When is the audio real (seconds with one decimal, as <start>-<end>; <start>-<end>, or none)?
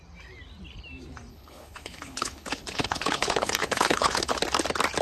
0.0-1.3; 4.3-5.0